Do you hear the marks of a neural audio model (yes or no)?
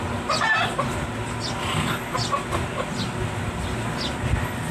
no